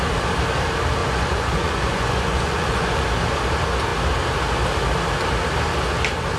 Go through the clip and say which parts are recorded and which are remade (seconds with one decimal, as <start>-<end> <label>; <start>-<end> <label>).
0.0-1.0 recorded; 1.0-3.0 remade; 3.0-6.4 recorded